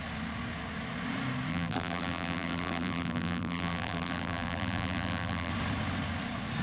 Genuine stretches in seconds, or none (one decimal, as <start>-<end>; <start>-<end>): 0.0-1.5; 5.5-6.6